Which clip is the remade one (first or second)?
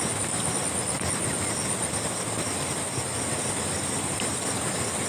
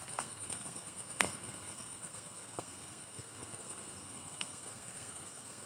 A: second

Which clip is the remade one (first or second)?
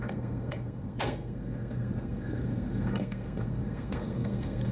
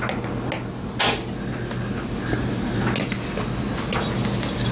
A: first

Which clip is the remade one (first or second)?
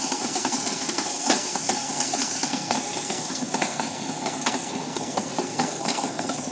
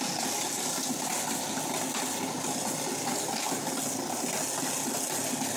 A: first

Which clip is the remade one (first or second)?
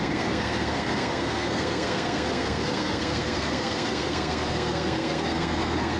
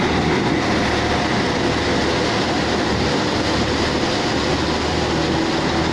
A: first